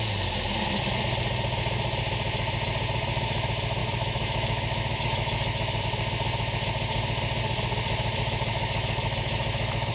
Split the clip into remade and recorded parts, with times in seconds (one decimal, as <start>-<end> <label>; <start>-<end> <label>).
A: 0.0-3.8 recorded; 3.8-5.8 remade; 5.8-8.5 recorded; 8.5-9.9 remade